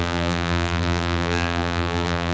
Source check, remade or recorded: remade